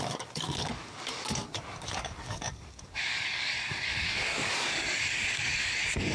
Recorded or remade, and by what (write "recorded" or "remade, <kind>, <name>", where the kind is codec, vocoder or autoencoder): remade, codec, DAC